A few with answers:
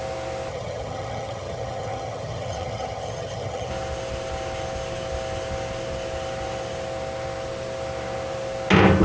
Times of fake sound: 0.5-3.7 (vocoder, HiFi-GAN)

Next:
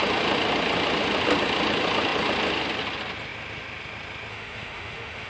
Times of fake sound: 4.3-5.3 (autoencoder, DAC-VAE)